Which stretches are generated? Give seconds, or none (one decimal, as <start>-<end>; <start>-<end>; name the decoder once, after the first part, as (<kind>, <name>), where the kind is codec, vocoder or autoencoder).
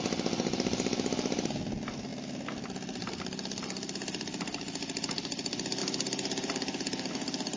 5.8-7.1 (vocoder, BigVGAN v2)